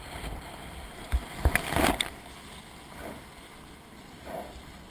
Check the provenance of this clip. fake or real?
real